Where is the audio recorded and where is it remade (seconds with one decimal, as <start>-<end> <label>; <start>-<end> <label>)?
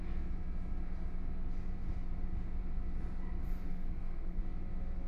0.0-3.7 recorded; 3.7-4.4 remade; 4.4-5.1 recorded